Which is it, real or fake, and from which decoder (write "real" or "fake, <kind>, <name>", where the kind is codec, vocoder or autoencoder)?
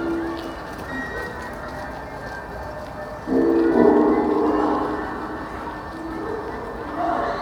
real